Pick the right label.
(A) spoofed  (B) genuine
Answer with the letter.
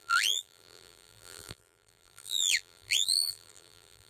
A